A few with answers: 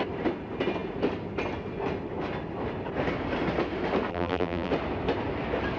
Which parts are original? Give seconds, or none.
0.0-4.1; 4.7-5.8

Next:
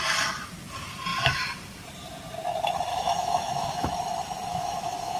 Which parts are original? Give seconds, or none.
0.0-2.9; 3.9-4.5

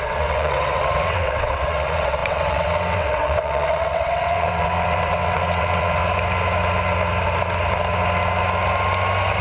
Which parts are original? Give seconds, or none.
6.0-9.4

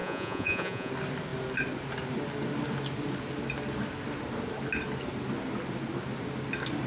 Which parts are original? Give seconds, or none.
0.9-6.9

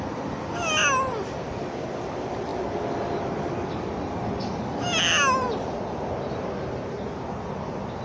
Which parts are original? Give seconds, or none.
0.0-8.0

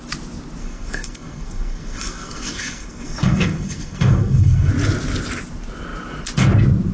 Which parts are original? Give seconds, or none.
0.0-0.6; 4.7-6.9